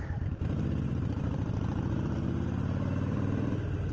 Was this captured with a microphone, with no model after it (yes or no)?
no